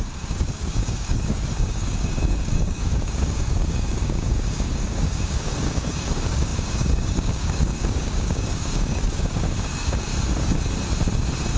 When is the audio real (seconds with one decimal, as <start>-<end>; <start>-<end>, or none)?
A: 10.1-11.6